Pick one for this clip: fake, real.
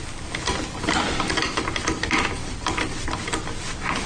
real